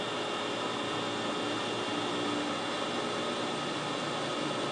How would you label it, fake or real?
real